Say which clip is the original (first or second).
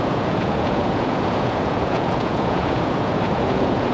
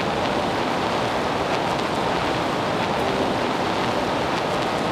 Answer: second